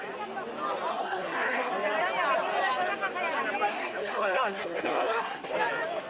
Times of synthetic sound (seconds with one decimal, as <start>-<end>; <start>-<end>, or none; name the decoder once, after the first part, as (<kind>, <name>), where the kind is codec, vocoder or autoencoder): 0.9-1.7 (codec, SNAC); 3.7-5.5